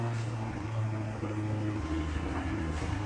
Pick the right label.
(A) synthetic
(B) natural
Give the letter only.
A